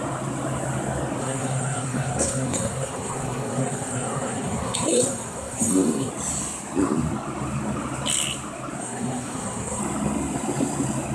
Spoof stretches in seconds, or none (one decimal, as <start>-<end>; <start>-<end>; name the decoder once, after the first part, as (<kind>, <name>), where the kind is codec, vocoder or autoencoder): 1.2-6.1 (codec, SNAC); 8.8-9.8

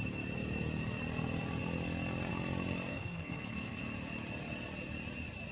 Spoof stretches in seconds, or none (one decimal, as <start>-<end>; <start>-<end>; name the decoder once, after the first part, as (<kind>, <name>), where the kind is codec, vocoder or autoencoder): 2.9-3.8 (codec, SNAC)

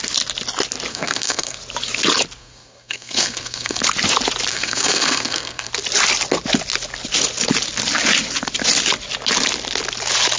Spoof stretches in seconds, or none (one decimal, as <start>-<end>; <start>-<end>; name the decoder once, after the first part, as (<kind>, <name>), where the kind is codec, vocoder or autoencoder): 0.9-1.6 (codec, SNAC); 2.4-3.8; 4.5-5.7